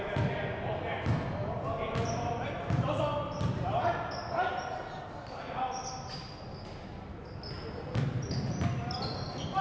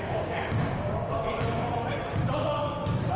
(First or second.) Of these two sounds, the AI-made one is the second